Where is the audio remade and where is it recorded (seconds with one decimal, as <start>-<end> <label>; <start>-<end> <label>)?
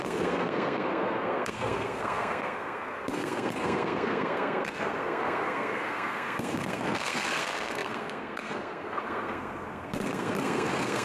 0.0-11.0 remade